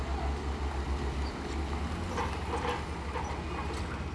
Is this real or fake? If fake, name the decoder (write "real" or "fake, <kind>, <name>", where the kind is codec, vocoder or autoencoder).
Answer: real